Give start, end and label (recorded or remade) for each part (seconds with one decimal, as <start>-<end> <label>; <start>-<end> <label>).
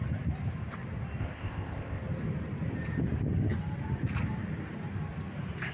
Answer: 0.0-1.2 recorded; 1.2-2.0 remade; 2.0-5.7 recorded